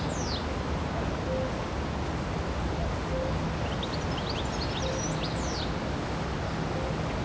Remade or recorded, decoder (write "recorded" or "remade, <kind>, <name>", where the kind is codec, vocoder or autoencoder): recorded